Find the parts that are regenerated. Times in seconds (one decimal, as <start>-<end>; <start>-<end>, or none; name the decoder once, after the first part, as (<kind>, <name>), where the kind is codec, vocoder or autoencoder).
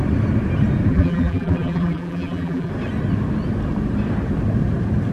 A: 0.9-2.7 (vocoder, BigVGAN v2)